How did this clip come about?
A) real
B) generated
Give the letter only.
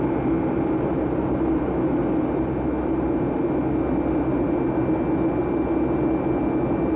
A